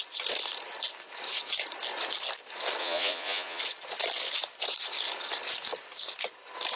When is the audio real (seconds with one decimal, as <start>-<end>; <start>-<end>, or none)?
0.0-2.8; 3.6-6.8